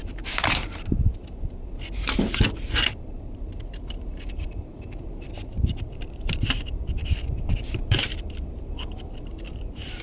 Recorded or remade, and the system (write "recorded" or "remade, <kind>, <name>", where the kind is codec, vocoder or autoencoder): remade, vocoder, BigVGAN v2